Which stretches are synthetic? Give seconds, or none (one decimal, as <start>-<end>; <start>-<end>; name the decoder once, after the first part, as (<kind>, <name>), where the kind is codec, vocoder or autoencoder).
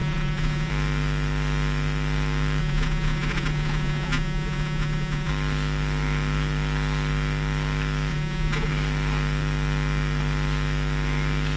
0.0-0.7 (vocoder, Vocos); 2.6-5.3; 8.1-8.7